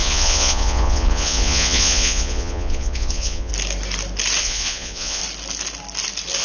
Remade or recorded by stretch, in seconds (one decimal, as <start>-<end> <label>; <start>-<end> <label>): 0.0-3.5 remade; 3.5-4.4 recorded; 4.4-5.2 remade; 5.2-6.4 recorded